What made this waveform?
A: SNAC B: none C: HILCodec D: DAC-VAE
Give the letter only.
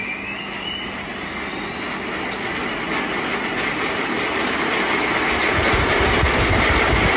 B